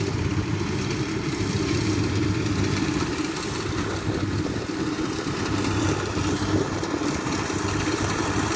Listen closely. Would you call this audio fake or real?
fake